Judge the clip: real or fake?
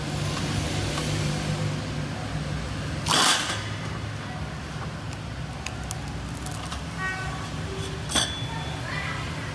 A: real